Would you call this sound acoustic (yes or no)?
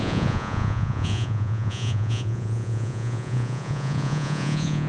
no